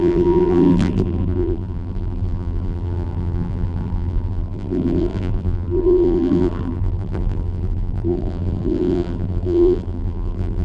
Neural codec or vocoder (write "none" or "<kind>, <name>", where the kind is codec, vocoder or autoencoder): vocoder, BigVGAN v2